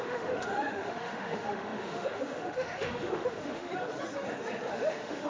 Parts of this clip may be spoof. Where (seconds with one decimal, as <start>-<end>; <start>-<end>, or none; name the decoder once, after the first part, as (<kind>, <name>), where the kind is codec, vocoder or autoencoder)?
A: 0.0-3.7 (autoencoder, DAC-VAE); 4.7-5.3